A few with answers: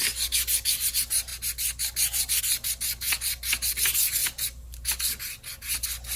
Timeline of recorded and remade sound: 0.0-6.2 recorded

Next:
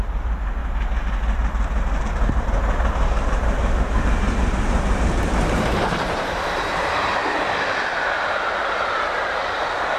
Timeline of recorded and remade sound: 0.0-0.6 remade; 0.6-2.0 recorded; 2.0-7.2 remade; 7.2-8.9 recorded; 8.9-10.0 remade

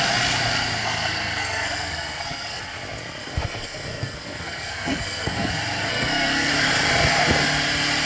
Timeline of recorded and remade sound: 0.0-0.8 recorded; 0.8-2.6 remade; 2.6-3.2 recorded; 3.2-5.5 remade; 5.5-5.9 recorded; 5.9-6.5 remade; 6.5-8.1 recorded